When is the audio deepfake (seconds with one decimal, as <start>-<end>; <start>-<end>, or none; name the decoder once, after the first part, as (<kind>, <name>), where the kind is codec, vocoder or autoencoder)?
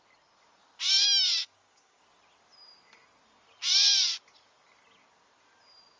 1.4-2.0 (codec, DAC)